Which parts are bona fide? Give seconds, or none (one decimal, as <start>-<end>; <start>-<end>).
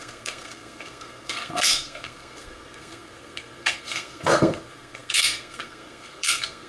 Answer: none